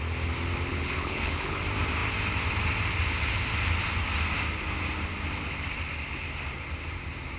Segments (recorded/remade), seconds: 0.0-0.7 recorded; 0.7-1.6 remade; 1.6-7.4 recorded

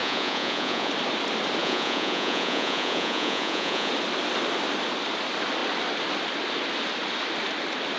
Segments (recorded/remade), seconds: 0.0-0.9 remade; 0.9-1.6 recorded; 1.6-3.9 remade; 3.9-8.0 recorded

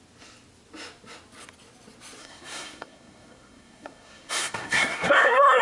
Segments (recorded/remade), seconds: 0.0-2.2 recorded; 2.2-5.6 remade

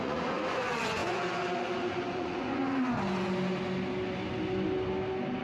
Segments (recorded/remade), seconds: 0.0-2.6 remade; 2.6-5.4 recorded

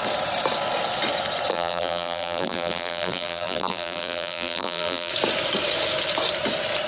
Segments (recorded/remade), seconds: 0.0-1.5 recorded; 1.5-5.1 remade; 5.1-6.9 recorded

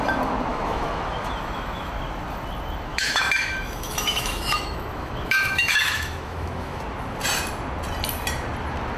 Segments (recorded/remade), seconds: 0.0-0.5 recorded; 0.5-1.9 remade; 1.9-2.9 recorded; 2.9-6.8 remade; 6.8-9.0 recorded